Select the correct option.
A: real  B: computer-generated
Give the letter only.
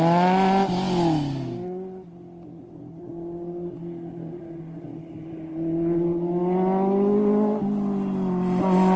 A